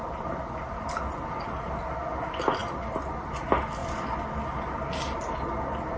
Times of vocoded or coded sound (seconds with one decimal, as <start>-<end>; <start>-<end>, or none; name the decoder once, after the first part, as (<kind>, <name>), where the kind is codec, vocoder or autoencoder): none